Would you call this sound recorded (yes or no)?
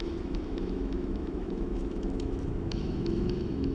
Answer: no